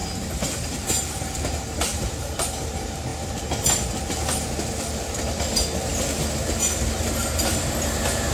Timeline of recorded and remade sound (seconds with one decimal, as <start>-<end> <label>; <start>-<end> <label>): 0.0-3.1 remade; 3.1-7.0 recorded; 7.0-8.3 remade